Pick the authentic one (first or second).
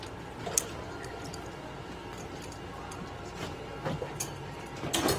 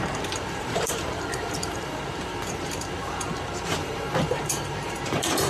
first